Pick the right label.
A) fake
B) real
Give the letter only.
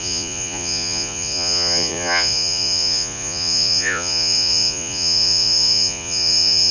A